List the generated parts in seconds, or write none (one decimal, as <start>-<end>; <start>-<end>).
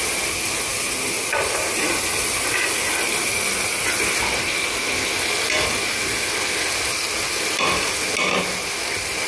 none